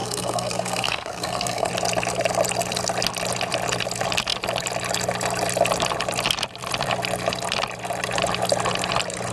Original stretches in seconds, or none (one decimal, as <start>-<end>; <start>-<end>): 1.7-9.3